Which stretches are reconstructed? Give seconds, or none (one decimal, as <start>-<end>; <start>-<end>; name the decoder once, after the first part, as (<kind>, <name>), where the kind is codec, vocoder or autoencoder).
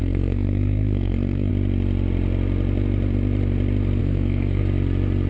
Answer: 0.0-1.5 (codec, SNAC); 4.0-4.6